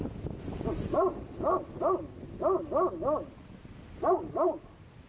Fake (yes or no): no